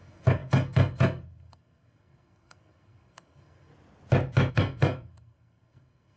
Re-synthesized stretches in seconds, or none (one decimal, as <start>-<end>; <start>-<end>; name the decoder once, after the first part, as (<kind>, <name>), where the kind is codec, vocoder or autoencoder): 0.0-3.7 (codec, SNAC); 4.5-6.2